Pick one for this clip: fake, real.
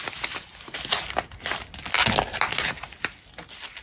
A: real